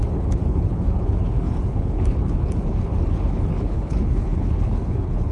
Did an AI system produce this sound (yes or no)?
yes